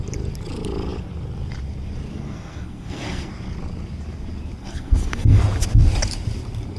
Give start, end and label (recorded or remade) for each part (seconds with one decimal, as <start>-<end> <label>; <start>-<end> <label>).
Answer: 0.0-2.1 recorded; 2.1-3.3 remade; 3.3-4.6 recorded; 4.6-5.4 remade; 5.4-6.8 recorded